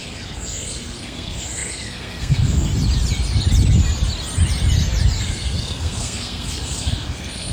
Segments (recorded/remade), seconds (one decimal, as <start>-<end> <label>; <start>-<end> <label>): 0.0-2.7 remade; 2.7-5.2 recorded; 5.2-7.5 remade